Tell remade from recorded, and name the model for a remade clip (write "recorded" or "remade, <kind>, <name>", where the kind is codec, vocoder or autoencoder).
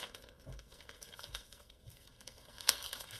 remade, codec, SNAC